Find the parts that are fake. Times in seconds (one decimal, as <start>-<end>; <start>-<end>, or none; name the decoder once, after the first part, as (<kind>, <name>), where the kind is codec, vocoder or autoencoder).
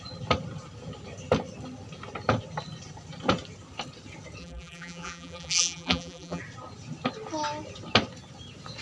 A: 4.4-6.4 (vocoder, BigVGAN v2)